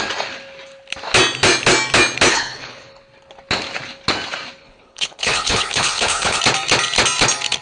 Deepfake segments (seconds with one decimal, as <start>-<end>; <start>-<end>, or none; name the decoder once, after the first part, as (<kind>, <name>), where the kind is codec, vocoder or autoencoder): 2.3-3.0 (codec, HILCodec); 4.6-6.4